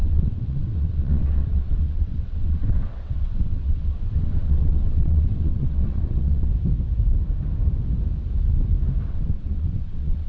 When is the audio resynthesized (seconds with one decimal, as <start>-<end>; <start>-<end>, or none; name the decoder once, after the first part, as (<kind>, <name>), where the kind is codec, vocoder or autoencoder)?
0.0-6.5 (vocoder, WaveNeXt); 9.1-10.3